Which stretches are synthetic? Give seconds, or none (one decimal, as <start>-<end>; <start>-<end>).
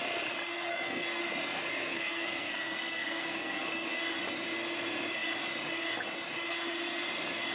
0.7-1.2; 1.7-4.0